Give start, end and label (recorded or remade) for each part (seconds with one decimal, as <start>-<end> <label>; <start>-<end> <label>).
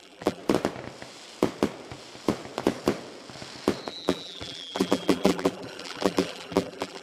0.0-0.4 remade; 0.4-3.9 recorded; 3.9-7.0 remade